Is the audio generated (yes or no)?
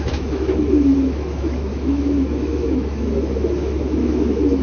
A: yes